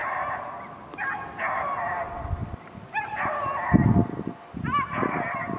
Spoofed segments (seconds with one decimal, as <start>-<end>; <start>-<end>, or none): none